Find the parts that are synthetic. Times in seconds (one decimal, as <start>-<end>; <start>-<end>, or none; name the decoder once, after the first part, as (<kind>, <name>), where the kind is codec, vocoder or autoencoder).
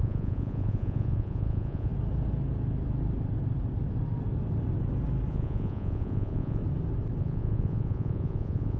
0.0-1.9 (vocoder, Vocos); 5.3-6.6; 7.2-8.8